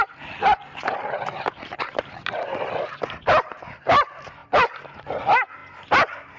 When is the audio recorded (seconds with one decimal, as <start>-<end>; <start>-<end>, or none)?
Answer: 0.0-6.4